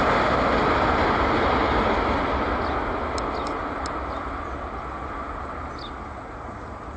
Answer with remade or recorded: recorded